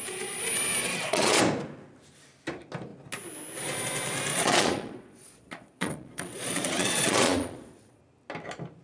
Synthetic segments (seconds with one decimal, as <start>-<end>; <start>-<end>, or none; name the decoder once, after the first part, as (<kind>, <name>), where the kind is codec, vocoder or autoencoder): 0.8-1.4 (vocoder, Vocos); 4.3-8.0